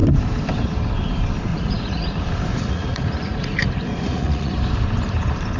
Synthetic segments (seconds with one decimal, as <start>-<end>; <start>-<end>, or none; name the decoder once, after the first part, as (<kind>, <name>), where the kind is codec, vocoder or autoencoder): 1.5-2.1 (vocoder, Vocos); 2.5-4.5